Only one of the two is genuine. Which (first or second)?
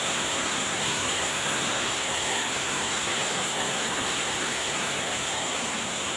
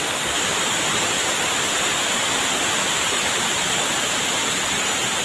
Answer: second